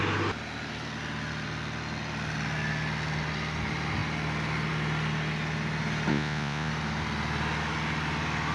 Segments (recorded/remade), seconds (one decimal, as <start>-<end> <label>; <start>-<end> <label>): 0.0-6.1 recorded; 6.1-6.7 remade; 6.7-8.5 recorded